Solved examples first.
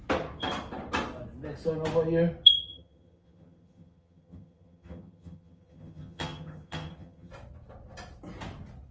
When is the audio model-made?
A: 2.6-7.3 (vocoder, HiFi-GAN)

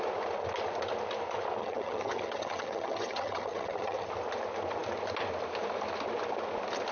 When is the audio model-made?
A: 1.6-4.1 (vocoder, HiFi-GAN)

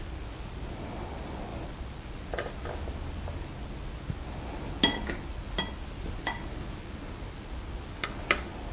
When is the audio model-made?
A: none